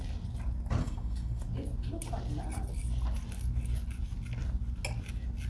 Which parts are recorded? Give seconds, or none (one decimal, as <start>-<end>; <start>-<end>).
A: 0.0-0.8; 1.4-5.5